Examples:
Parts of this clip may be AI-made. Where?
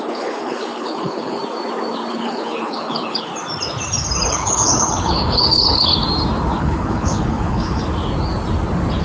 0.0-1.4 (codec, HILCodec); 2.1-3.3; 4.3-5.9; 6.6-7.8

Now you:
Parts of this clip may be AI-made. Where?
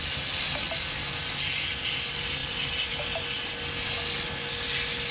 none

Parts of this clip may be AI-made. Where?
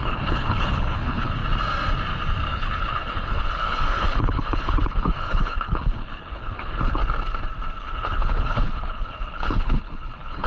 0.0-1.4 (codec, HILCodec); 2.5-7.0; 7.8-10.5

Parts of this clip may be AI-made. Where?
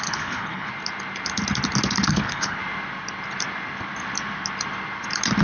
0.0-0.7 (codec, HILCodec); 2.1-2.6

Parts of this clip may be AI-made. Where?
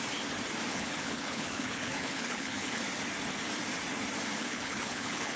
0.7-2.8 (codec, HILCodec); 4.4-5.4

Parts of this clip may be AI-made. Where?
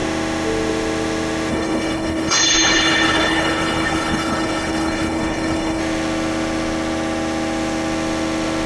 1.5-5.8 (codec, HILCodec)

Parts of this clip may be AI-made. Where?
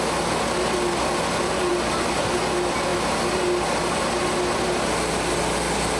none